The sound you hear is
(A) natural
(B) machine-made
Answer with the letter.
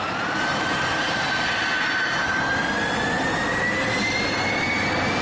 A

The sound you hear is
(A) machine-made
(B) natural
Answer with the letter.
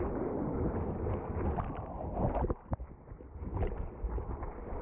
B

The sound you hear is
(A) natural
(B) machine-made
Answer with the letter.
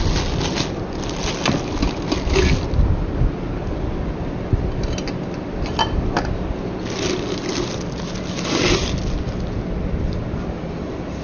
A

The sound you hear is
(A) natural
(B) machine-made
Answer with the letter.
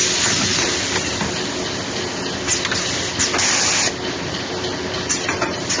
A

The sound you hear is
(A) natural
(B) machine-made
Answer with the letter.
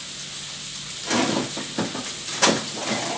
A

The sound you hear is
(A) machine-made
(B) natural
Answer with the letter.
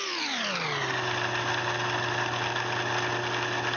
B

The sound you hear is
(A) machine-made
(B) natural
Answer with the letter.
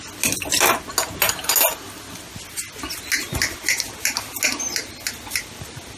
B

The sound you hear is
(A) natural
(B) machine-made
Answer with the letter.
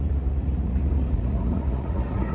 B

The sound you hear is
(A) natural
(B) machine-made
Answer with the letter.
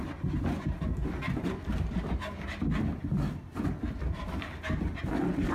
A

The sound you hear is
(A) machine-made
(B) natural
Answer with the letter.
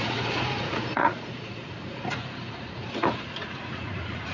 A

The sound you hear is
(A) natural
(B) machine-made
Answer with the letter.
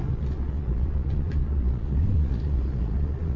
B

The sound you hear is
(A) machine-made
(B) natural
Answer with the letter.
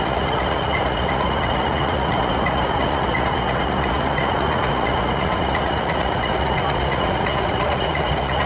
A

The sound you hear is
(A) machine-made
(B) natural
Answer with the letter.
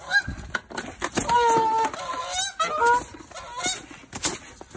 B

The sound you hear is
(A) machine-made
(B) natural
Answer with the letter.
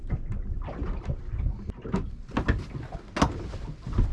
B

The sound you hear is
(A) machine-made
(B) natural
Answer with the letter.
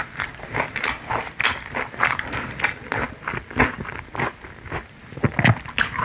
B